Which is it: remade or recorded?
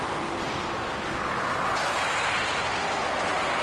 recorded